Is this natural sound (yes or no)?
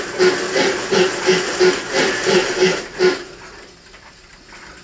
yes